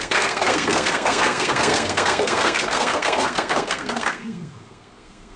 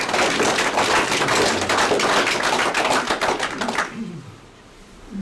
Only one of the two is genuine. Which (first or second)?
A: second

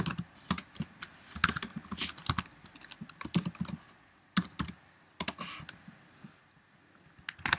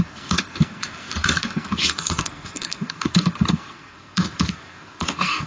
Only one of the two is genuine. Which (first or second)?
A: first